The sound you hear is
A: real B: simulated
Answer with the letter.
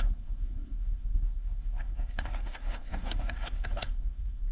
B